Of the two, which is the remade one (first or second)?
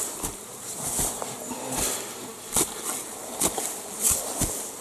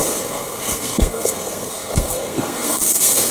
second